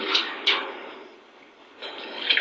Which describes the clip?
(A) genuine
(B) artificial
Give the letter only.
B